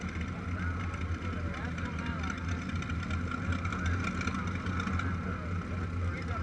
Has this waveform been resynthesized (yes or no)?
no